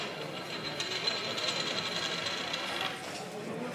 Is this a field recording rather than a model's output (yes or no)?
yes